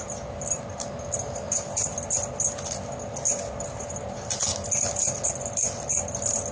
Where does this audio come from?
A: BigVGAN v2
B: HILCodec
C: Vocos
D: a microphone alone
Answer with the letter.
D